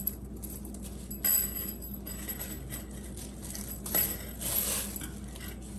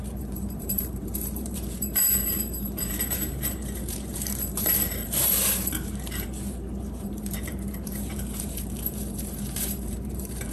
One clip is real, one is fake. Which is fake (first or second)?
second